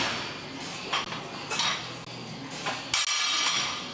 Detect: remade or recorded recorded